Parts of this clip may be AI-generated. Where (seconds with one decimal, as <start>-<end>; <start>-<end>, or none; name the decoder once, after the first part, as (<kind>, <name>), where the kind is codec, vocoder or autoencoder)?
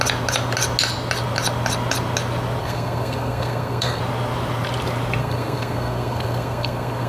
2.6-4.0 (codec, SNAC); 5.2-7.1